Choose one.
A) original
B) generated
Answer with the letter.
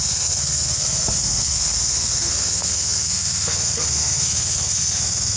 B